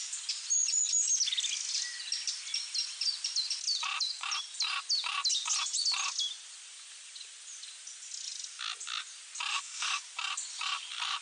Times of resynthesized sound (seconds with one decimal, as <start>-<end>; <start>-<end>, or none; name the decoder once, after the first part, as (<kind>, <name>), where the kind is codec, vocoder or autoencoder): 9.5-10.0 (autoencoder, DAC-VAE)